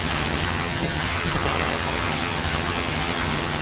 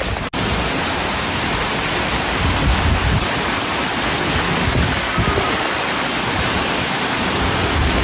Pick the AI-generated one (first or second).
first